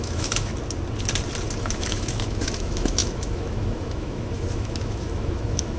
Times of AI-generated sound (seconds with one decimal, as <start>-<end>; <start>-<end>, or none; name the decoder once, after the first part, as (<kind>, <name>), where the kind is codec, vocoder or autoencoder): 0.0-0.5 (autoencoder, DAC-VAE); 1.6-5.8